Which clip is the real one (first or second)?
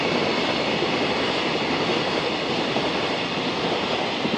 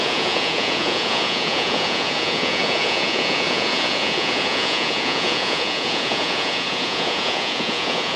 first